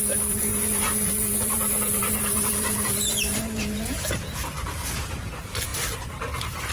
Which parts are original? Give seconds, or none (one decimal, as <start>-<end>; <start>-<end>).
none